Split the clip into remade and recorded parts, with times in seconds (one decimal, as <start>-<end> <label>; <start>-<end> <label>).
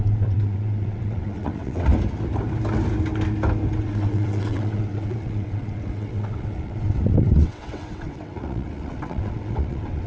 0.0-1.9 remade; 1.9-3.8 recorded; 3.8-10.1 remade